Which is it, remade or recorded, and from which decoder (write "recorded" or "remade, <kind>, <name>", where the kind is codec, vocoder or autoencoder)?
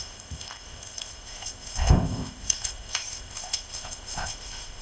remade, codec, ZipCodec